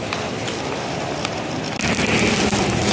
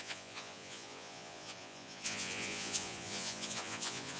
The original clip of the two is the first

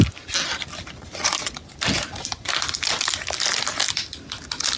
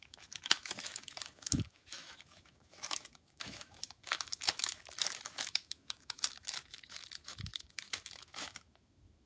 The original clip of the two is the first